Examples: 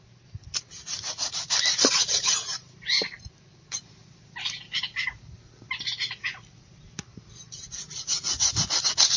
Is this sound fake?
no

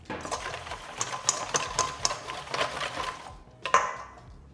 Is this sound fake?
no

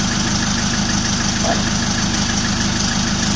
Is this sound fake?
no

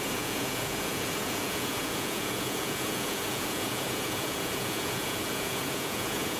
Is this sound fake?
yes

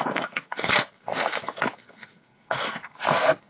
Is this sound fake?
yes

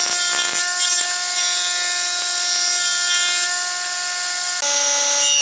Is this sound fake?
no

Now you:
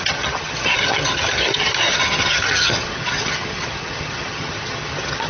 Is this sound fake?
yes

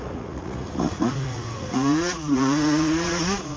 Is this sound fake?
yes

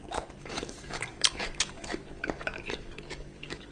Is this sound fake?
yes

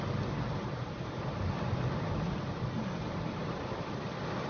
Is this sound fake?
yes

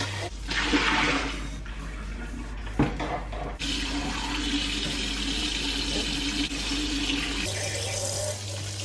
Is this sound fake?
no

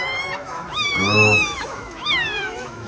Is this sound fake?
yes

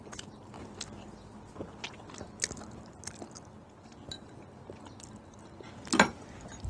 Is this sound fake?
no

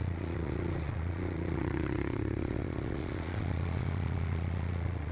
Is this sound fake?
yes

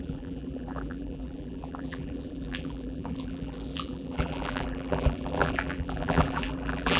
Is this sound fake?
yes